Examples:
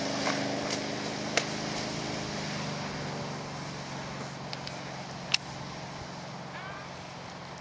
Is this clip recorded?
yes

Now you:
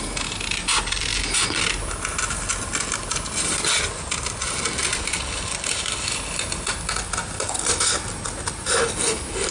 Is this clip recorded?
yes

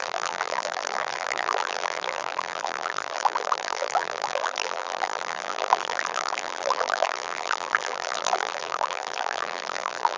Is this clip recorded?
no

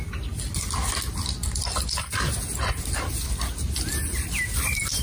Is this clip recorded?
yes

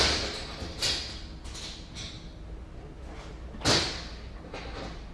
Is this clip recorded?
yes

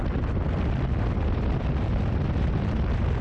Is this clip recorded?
yes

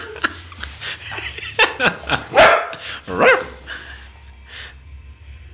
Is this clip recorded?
yes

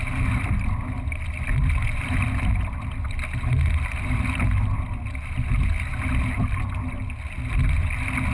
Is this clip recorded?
yes